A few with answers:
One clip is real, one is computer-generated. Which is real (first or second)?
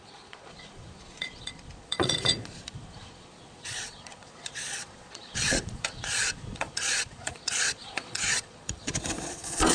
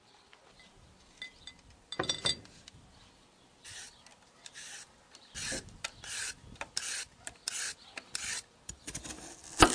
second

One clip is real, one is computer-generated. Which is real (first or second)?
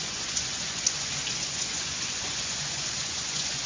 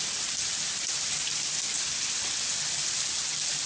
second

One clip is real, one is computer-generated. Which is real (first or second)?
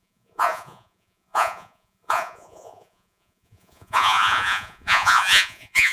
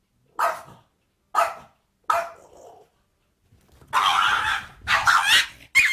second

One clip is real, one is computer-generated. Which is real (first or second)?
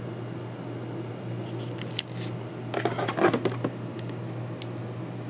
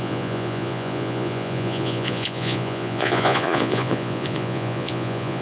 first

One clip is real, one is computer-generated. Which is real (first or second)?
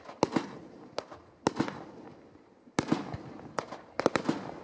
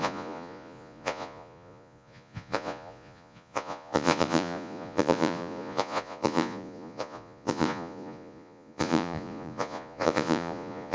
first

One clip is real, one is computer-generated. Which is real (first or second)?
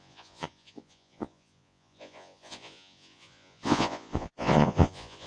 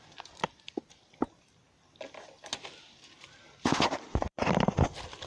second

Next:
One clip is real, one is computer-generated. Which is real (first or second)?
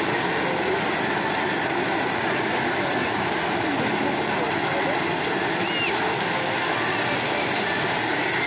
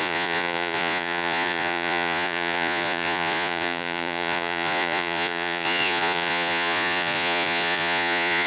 first